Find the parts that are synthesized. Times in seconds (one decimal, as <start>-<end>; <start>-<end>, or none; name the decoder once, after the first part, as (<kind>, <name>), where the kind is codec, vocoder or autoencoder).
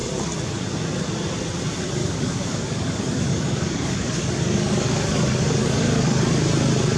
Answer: 2.0-6.2 (codec, DAC)